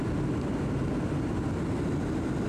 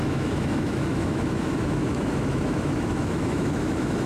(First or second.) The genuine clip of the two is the first